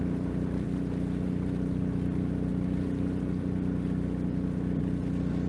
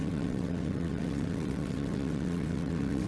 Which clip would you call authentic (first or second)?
first